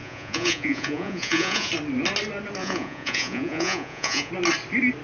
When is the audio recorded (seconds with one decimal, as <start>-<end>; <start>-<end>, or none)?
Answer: 1.7-2.6; 4.3-5.0